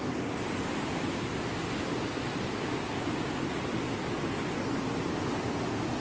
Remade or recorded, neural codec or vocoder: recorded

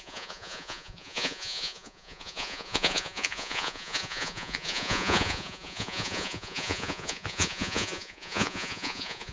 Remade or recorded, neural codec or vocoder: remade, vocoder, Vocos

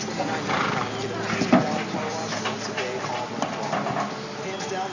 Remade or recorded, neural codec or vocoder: recorded